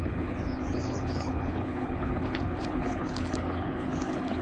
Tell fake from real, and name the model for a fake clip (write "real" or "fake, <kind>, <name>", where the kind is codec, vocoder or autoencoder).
fake, codec, HILCodec